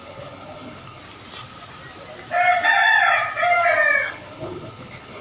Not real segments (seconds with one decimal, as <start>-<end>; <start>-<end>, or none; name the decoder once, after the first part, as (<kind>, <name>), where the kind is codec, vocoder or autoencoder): 0.0-1.0 (codec, HILCodec); 4.1-5.2